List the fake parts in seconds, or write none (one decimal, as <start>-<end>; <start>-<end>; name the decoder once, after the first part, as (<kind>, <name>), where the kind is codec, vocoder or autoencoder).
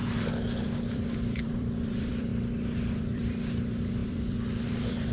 0.9-2.3 (vocoder, BigVGAN v2); 3.0-5.1